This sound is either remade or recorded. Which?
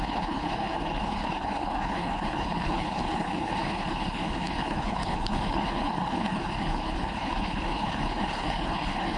remade